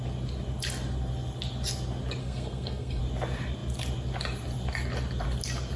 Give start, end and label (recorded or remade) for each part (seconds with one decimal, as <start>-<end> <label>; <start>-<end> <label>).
0.0-2.2 recorded; 2.2-3.0 remade; 3.0-5.8 recorded